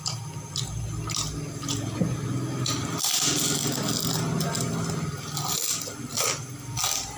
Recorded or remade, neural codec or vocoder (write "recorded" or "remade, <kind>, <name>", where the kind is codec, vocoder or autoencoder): recorded